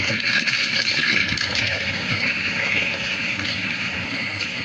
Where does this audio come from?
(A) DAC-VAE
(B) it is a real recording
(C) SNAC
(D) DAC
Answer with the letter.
C